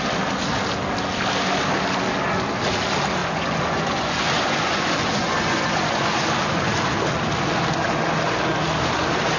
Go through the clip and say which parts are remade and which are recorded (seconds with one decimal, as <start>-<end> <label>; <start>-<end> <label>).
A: 0.0-3.2 recorded; 3.2-6.7 remade; 6.7-9.4 recorded